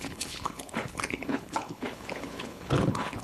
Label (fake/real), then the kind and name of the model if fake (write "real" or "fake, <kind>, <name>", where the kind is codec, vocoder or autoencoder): fake, codec, HILCodec